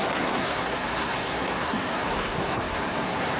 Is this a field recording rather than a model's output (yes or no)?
no